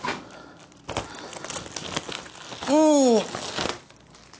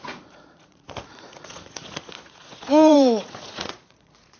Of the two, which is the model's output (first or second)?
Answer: second